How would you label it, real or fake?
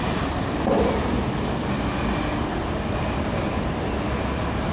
real